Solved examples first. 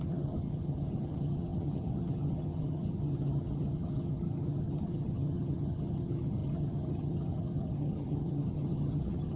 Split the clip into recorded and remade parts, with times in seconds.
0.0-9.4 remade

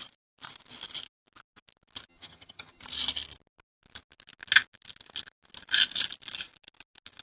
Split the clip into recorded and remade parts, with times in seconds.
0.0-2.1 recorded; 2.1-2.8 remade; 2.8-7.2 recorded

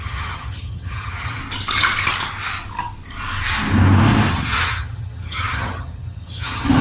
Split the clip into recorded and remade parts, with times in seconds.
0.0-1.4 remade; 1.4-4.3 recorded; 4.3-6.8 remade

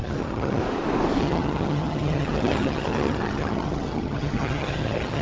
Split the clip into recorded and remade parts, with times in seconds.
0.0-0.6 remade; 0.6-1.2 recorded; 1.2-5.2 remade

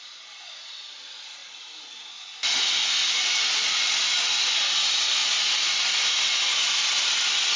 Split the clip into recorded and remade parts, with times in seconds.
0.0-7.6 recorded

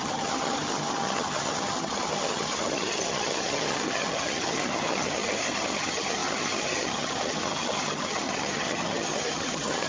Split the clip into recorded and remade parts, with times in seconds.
0.0-9.9 remade

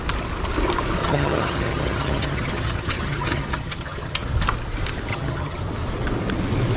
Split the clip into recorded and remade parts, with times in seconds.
0.0-1.0 recorded; 1.0-4.2 remade; 4.2-5.1 recorded; 5.1-5.6 remade; 5.6-6.8 recorded

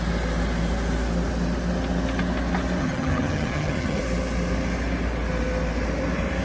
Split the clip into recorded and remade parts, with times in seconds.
0.0-2.8 recorded; 2.8-4.0 remade; 4.0-6.4 recorded